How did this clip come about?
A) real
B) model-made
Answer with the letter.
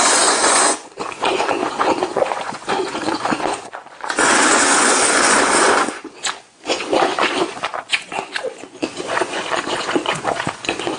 B